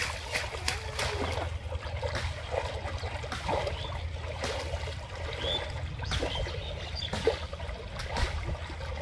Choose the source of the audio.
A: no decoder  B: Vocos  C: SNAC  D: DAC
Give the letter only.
A